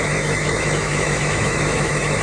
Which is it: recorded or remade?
remade